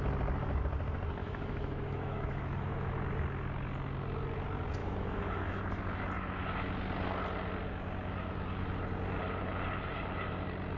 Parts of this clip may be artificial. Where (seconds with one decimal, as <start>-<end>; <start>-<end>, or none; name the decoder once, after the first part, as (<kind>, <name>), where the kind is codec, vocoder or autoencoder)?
1.2-2.9 (autoencoder, DAC-VAE); 4.8-5.6